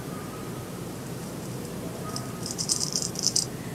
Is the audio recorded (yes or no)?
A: no